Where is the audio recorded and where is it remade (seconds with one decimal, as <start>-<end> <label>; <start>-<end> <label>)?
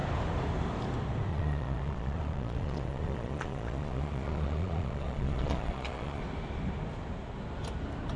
0.0-1.3 recorded; 1.3-6.2 remade; 6.2-8.2 recorded